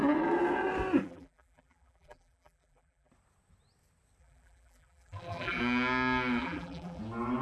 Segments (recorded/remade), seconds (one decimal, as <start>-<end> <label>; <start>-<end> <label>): 0.0-1.0 recorded; 1.0-3.1 remade; 3.1-4.2 recorded; 4.2-5.6 remade; 5.6-6.4 recorded; 6.4-7.0 remade; 7.0-7.4 recorded